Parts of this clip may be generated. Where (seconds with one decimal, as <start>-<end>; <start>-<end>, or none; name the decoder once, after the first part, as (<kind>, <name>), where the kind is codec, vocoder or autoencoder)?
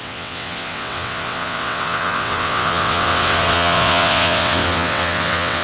0.0-5.6 (vocoder, WaveNeXt)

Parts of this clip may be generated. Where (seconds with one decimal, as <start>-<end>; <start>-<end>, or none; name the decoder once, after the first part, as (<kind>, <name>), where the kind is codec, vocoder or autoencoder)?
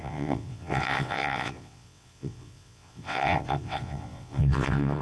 0.0-5.0 (vocoder, WaveNeXt)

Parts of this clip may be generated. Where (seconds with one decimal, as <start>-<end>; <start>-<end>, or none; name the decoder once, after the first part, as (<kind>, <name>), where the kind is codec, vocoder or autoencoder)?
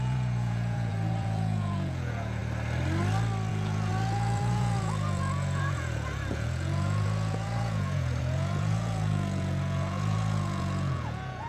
0.0-2.4 (vocoder, Vocos); 3.5-11.5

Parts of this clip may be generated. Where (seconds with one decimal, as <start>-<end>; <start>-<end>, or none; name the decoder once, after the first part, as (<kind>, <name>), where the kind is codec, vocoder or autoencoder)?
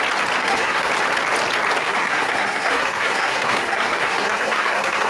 0.4-0.9 (codec, SNAC); 1.8-5.1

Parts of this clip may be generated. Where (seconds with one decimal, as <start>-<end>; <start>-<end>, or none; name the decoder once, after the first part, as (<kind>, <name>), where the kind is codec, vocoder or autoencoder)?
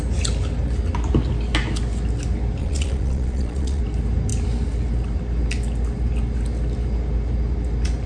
2.6-3.8 (vocoder, Vocos)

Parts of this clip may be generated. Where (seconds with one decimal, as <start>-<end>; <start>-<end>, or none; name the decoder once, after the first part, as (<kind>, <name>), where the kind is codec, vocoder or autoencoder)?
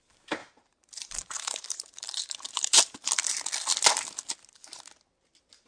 0.4-3.3 (vocoder, BigVGAN v2)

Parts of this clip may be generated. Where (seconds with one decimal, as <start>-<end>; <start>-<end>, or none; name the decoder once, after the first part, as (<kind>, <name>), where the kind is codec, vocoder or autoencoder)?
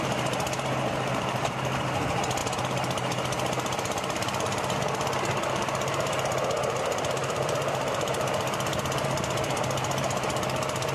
7.2-10.0 (vocoder, BigVGAN v2)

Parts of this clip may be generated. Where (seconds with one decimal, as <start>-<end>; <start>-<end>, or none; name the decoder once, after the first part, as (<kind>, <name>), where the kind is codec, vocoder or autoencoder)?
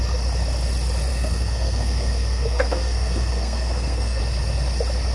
1.1-4.2 (codec, SNAC)